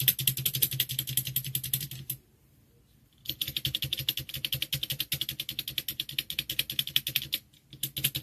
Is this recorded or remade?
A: recorded